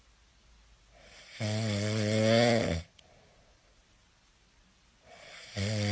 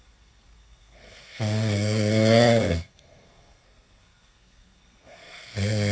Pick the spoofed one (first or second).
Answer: second